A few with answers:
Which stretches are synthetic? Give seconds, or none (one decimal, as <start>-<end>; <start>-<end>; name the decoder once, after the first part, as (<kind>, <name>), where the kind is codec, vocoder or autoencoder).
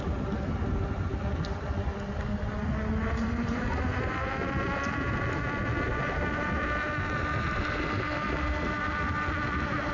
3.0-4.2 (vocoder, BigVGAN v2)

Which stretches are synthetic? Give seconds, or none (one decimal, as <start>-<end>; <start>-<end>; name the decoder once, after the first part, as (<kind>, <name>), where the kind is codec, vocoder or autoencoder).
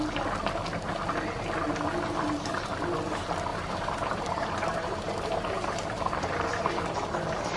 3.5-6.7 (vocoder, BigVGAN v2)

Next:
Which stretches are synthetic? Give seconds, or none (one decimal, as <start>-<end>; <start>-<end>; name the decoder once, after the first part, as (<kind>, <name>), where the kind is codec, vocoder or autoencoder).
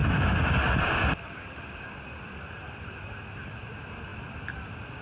none